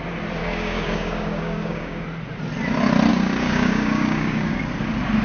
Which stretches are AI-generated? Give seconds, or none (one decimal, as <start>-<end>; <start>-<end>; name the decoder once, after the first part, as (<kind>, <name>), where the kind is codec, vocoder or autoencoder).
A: 0.4-2.0 (codec, DAC); 3.1-4.6